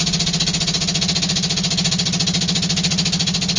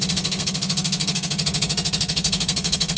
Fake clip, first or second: second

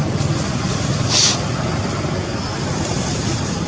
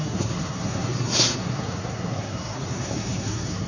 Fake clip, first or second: second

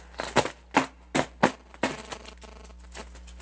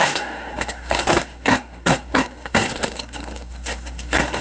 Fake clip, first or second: second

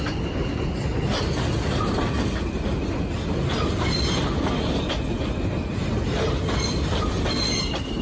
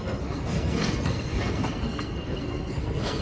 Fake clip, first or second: second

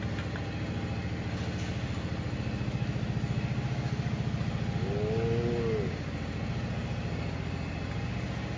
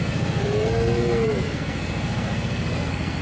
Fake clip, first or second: second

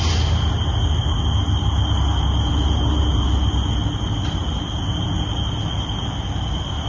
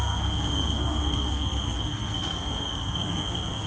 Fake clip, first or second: second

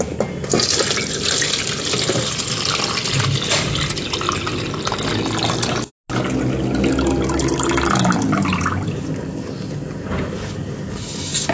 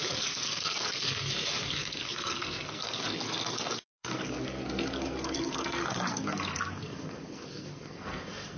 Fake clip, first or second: second